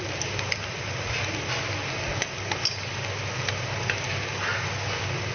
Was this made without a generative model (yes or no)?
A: yes